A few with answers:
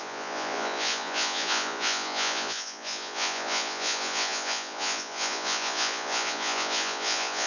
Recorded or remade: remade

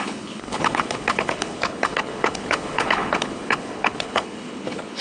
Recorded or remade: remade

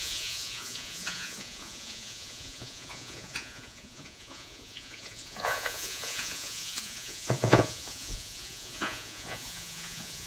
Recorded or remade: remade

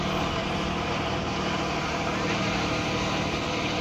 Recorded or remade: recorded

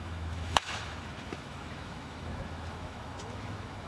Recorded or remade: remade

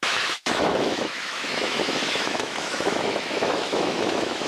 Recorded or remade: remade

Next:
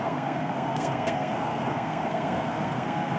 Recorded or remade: remade